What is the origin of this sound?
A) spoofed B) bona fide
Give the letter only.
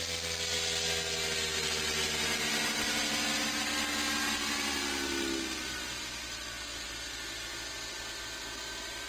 B